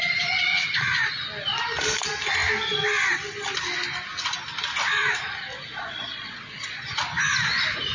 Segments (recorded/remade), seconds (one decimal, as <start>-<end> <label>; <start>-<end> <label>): 0.0-5.5 recorded; 5.5-6.8 remade; 6.8-7.9 recorded